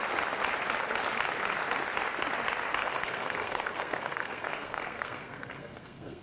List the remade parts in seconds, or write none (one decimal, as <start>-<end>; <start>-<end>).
2.8-6.2